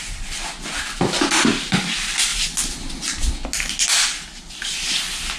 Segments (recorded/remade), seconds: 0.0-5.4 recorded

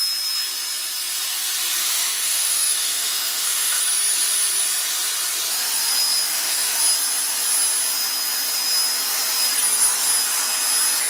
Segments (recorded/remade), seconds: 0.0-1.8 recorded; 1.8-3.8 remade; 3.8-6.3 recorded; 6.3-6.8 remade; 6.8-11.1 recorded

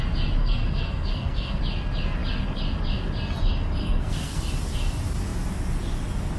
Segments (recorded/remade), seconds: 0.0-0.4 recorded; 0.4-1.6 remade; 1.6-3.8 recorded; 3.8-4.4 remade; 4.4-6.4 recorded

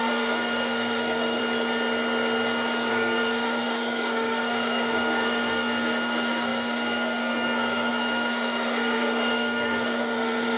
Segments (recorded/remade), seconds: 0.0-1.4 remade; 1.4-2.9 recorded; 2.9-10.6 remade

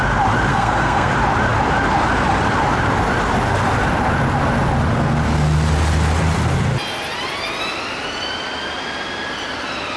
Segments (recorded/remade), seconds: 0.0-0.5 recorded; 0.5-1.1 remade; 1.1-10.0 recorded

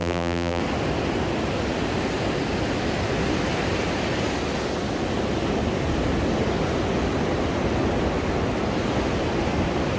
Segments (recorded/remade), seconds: 0.0-0.6 remade; 0.6-10.0 recorded